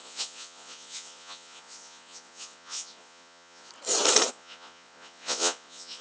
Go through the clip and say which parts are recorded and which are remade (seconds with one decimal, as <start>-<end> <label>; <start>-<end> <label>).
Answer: 0.0-3.7 remade; 3.7-4.3 recorded; 4.3-6.0 remade